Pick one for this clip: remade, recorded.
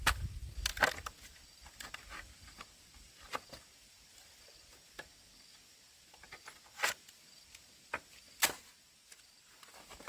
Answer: recorded